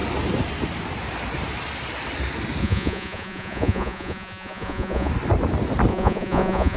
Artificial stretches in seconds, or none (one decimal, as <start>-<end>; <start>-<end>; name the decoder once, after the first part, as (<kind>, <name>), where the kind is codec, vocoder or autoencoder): 2.6-5.1 (vocoder, Vocos); 5.9-6.8